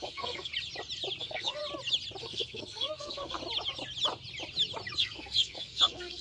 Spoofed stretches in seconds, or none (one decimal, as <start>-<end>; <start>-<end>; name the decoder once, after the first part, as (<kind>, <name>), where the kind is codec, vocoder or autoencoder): 0.0-0.5 (codec, SNAC); 1.2-1.6; 2.2-3.4; 5.0-6.2